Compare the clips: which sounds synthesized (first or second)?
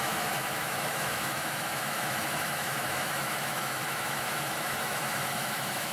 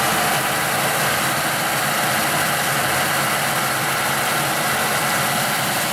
first